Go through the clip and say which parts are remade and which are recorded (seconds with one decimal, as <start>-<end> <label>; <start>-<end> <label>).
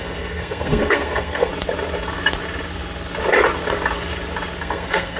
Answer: 0.0-1.5 remade; 1.5-4.6 recorded; 4.6-5.2 remade